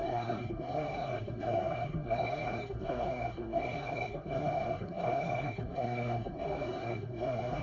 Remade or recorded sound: remade